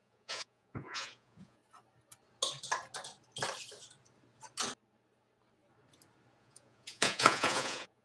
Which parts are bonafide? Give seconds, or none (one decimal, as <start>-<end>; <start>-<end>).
1.6-6.4